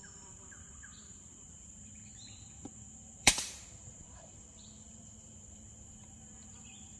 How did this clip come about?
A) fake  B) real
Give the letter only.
A